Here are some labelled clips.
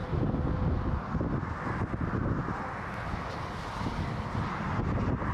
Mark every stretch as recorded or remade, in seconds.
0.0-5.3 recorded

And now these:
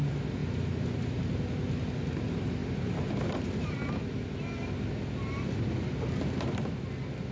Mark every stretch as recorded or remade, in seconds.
0.0-2.6 recorded; 2.6-3.1 remade; 3.1-7.3 recorded

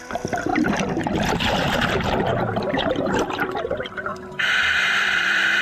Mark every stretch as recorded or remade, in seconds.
0.0-0.5 remade; 0.5-1.9 recorded; 1.9-2.3 remade; 2.3-2.9 recorded; 2.9-4.1 remade; 4.1-4.8 recorded; 4.8-5.6 remade

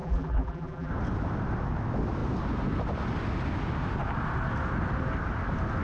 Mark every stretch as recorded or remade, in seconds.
0.0-0.9 remade; 0.9-5.8 recorded

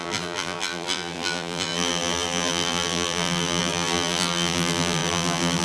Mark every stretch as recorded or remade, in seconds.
0.0-5.6 remade

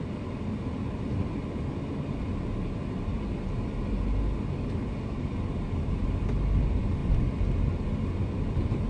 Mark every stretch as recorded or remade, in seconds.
0.0-8.9 recorded